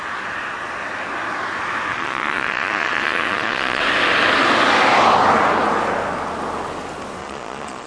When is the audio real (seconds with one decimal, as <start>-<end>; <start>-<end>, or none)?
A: 0.0-1.9; 3.8-7.2